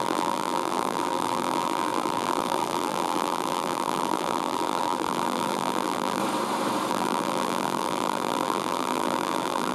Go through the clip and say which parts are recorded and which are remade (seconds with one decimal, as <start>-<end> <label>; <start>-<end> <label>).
0.0-6.2 remade; 6.2-6.9 recorded; 6.9-9.7 remade

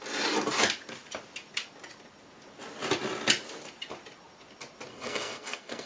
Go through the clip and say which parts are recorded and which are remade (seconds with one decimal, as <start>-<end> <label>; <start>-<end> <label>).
0.0-4.9 recorded; 4.9-5.9 remade

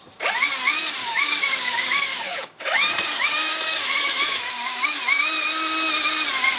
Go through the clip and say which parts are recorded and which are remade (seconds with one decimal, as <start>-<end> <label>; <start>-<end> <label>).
0.0-1.0 recorded; 1.0-5.0 remade; 5.0-6.6 recorded

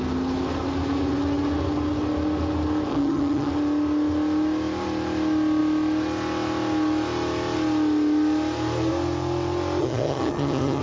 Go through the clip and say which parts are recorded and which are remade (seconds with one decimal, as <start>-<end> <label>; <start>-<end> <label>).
0.0-2.9 recorded; 2.9-3.5 remade; 3.5-9.8 recorded; 9.8-10.8 remade

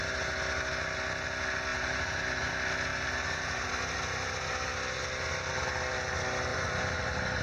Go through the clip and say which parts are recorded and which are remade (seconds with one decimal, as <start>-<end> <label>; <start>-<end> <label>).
0.0-1.7 recorded; 1.7-2.5 remade; 2.5-2.9 recorded; 2.9-3.7 remade; 3.7-6.5 recorded; 6.5-7.4 remade

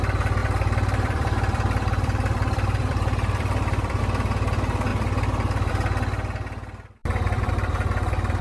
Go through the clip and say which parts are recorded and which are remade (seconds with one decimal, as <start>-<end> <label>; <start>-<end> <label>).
0.0-0.4 recorded; 0.4-4.0 remade; 4.0-4.9 recorded; 4.9-5.7 remade; 5.7-7.0 recorded; 7.0-7.5 remade; 7.5-8.4 recorded